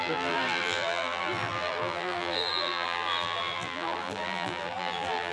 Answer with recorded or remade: remade